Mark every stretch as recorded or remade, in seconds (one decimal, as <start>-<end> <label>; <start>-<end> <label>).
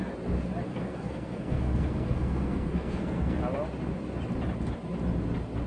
0.0-0.7 recorded; 0.7-3.4 remade; 3.4-5.7 recorded